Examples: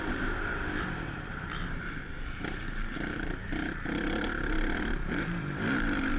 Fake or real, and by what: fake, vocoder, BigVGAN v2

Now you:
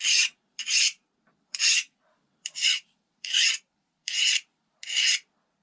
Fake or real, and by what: fake, vocoder, BigVGAN v2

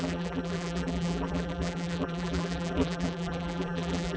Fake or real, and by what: fake, vocoder, BigVGAN v2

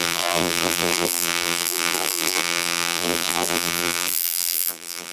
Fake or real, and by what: fake, vocoder, BigVGAN v2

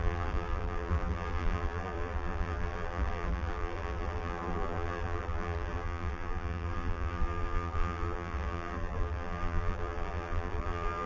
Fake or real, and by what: fake, vocoder, BigVGAN v2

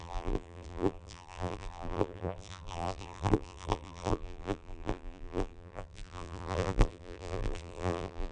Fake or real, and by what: fake, vocoder, BigVGAN v2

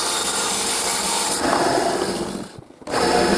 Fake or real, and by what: real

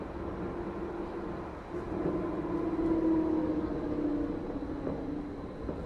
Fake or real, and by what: real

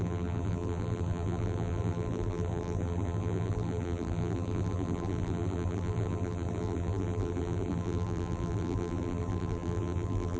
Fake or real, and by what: fake, vocoder, BigVGAN v2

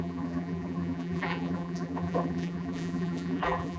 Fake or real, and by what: fake, vocoder, BigVGAN v2